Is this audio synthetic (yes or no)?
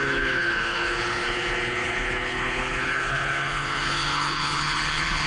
yes